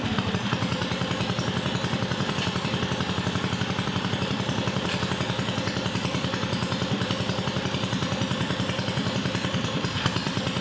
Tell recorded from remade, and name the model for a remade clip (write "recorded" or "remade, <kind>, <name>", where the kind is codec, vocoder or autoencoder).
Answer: remade, vocoder, BigVGAN v2